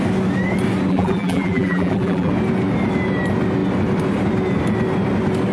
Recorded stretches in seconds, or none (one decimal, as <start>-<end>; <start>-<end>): 0.0-0.9; 2.3-5.5